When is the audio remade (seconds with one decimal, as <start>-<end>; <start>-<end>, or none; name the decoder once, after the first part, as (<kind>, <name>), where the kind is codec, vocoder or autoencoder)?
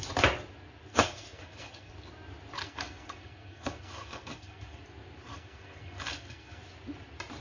0.9-1.9 (codec, SNAC); 2.6-4.8; 5.3-6.6